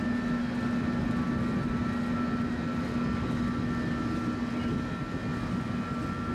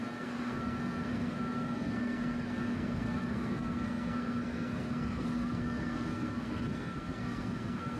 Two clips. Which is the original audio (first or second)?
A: first